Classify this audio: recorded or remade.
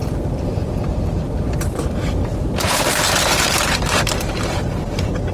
remade